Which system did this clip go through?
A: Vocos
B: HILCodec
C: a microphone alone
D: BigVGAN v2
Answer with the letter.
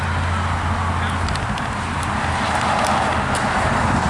C